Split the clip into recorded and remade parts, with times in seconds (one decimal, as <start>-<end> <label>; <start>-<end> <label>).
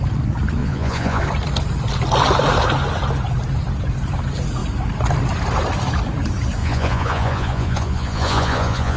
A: 0.0-0.6 recorded; 0.6-1.2 remade; 1.2-6.6 recorded; 6.6-9.0 remade